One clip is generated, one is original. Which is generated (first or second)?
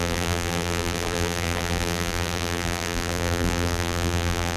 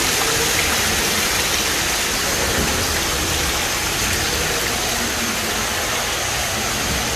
first